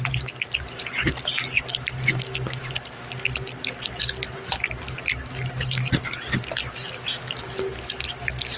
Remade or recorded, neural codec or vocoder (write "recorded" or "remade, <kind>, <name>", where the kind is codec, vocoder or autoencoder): recorded